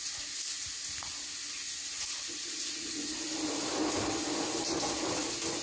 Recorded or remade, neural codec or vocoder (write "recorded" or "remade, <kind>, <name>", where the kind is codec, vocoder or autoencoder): recorded